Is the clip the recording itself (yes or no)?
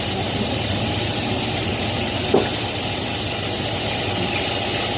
yes